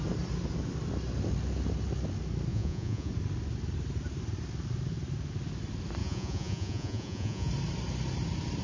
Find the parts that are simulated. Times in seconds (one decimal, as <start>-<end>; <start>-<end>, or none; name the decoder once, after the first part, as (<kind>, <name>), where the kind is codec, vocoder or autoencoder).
2.5-3.1 (vocoder, Vocos); 6.0-7.5